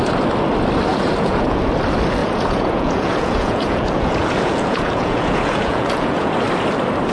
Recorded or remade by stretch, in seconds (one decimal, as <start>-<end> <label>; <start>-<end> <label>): 0.0-0.9 recorded; 0.9-1.6 remade; 1.6-2.2 recorded; 2.2-6.4 remade; 6.4-7.1 recorded